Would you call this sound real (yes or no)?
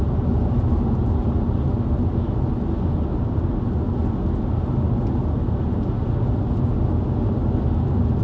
yes